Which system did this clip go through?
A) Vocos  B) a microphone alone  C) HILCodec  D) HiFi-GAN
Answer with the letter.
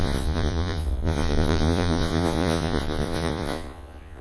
A